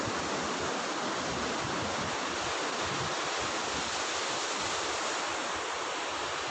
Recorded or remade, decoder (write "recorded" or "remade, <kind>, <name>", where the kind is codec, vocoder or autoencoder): recorded